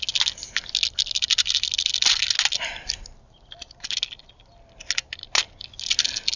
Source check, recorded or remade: recorded